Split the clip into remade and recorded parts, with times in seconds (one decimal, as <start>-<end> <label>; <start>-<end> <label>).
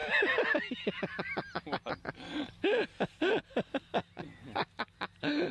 0.0-5.5 recorded